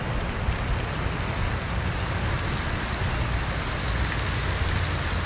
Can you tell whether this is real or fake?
real